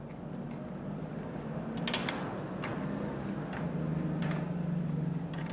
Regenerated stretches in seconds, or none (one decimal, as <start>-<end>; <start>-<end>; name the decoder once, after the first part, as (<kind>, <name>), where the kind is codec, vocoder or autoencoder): none